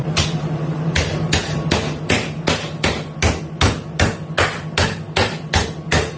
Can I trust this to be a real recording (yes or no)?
yes